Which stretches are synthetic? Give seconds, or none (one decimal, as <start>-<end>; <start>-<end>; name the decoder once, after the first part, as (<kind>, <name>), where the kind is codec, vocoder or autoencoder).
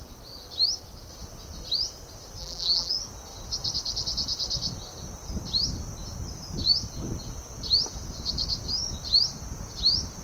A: 2.4-2.9 (vocoder, BigVGAN v2)